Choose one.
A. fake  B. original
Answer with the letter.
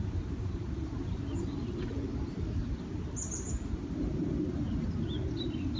B